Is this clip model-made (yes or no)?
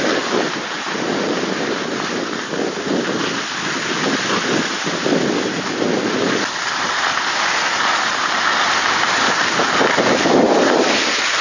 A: no